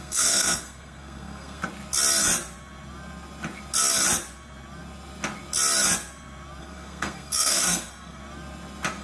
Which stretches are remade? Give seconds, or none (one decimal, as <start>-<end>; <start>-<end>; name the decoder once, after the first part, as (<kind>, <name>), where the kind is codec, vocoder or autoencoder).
0.0-1.6 (codec, SNAC); 6.6-8.2